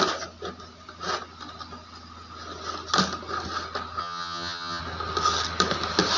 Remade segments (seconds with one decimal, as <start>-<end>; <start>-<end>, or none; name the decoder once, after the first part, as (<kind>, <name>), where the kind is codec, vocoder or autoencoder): 4.0-4.8 (vocoder, HiFi-GAN)